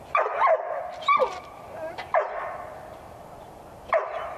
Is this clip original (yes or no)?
no